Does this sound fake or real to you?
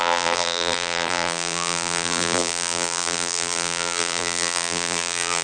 fake